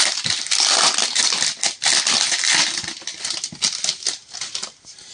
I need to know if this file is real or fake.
real